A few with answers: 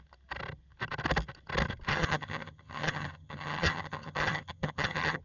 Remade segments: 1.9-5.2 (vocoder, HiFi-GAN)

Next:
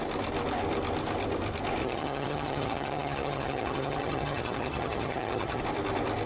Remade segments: 1.8-5.6 (vocoder, HiFi-GAN)

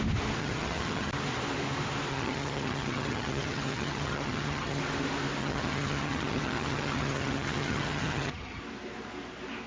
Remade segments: 0.4-1.1 (vocoder, HiFi-GAN); 2.1-4.8; 5.4-8.6

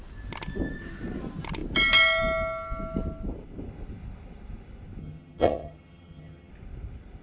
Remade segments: 5.0-6.5 (vocoder, HiFi-GAN)

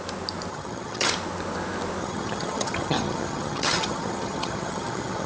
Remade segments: 0.5-1.1 (vocoder, HiFi-GAN); 2.0-5.3

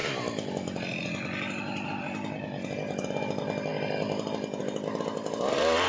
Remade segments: none

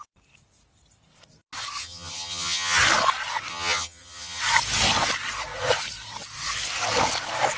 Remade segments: 1.8-2.8 (vocoder, HiFi-GAN); 3.5-4.4